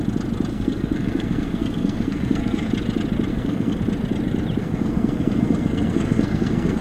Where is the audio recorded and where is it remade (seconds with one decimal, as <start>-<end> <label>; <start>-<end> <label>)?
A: 0.0-0.5 recorded; 0.5-2.7 remade; 2.7-3.3 recorded; 3.3-3.8 remade; 3.8-4.6 recorded; 4.6-6.8 remade